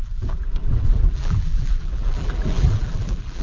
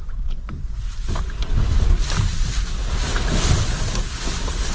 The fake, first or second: first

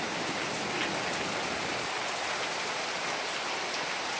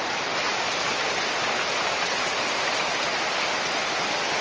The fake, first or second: first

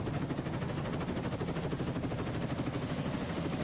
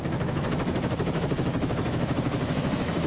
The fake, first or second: second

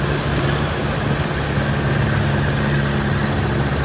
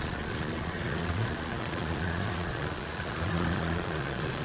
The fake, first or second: second